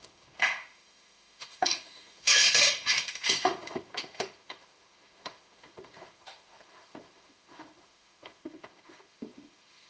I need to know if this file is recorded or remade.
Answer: remade